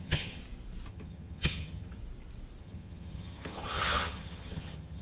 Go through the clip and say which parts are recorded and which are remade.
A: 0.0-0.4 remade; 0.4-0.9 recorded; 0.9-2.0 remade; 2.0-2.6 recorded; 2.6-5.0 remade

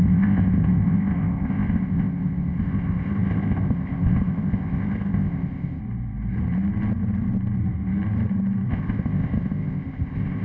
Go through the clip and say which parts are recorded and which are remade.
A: 0.0-5.8 remade; 5.8-8.7 recorded; 8.7-10.4 remade